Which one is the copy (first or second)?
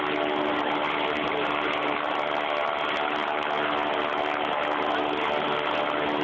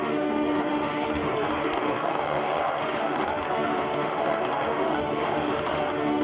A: second